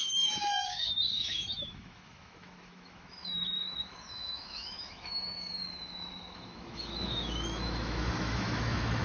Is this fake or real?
fake